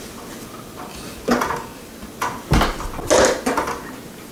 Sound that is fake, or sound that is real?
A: real